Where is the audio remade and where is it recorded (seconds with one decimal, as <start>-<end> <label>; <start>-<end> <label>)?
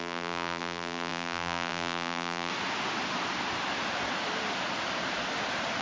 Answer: 0.0-2.5 remade; 2.5-5.8 recorded